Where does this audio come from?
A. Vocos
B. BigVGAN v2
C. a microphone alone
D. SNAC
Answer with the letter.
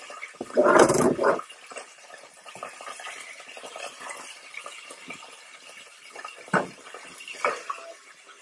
C